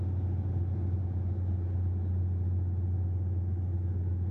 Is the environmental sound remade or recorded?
recorded